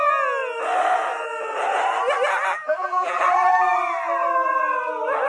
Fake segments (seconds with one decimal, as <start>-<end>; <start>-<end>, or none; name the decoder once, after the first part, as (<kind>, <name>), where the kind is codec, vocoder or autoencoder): 2.5-3.2 (vocoder, BigVGAN v2)